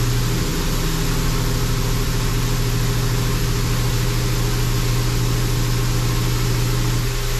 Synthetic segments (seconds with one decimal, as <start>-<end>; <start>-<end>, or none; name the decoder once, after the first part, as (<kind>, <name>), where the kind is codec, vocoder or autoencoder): none